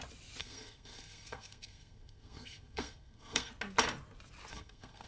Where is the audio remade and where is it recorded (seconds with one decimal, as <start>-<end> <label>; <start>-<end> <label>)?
0.0-0.4 recorded; 0.4-3.5 remade; 3.5-4.5 recorded; 4.5-5.1 remade